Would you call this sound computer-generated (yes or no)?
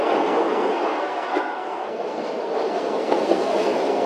yes